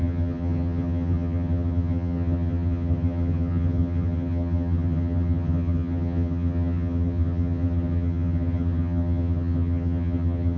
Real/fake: fake